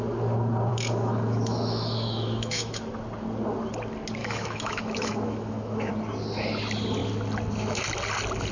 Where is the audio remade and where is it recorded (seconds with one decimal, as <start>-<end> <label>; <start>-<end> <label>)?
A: 0.0-0.7 recorded; 0.7-2.8 remade; 2.8-4.2 recorded; 4.2-5.9 remade; 5.9-8.5 recorded